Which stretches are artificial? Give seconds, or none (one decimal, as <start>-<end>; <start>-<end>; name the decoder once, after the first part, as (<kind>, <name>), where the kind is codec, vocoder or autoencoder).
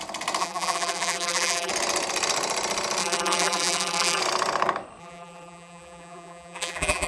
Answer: 0.4-1.7 (vocoder, BigVGAN v2); 3.0-4.2; 5.0-7.1